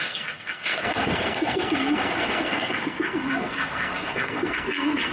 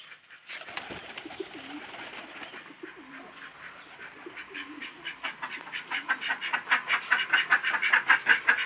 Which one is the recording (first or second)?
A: second